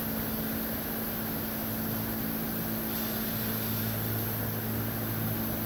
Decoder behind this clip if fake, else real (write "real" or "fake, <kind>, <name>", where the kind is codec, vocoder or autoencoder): real